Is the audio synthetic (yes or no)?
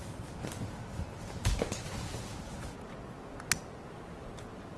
no